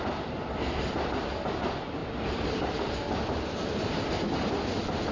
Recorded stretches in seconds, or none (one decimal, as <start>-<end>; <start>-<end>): 0.0-2.0; 2.8-5.1